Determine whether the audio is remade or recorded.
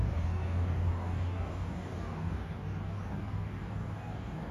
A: remade